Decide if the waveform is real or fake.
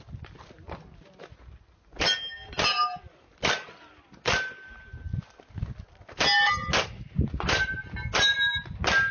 real